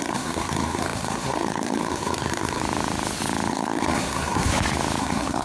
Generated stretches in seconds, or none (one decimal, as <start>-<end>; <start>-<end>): 0.0-2.6; 3.5-4.5; 5.0-5.4